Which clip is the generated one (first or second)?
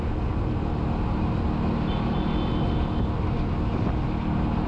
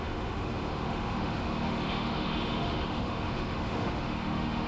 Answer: second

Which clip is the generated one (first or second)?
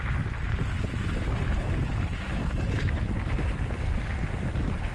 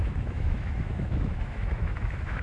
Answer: second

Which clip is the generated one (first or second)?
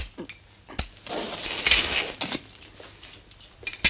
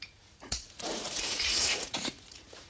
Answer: second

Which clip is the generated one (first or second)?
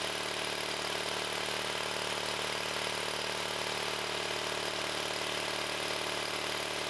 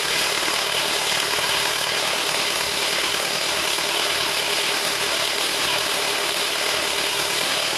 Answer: second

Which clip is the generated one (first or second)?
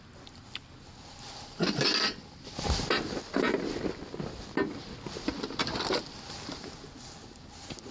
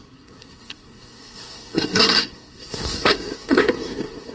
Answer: second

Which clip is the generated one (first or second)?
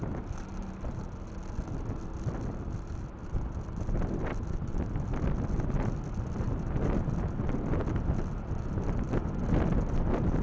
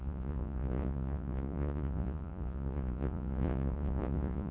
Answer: second